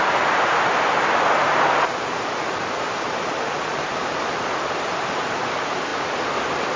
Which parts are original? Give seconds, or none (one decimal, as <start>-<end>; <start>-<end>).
0.0-3.7; 4.7-5.9